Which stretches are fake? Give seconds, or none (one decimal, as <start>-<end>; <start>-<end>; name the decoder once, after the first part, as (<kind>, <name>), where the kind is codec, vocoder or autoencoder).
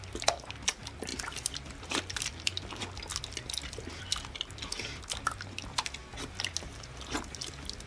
none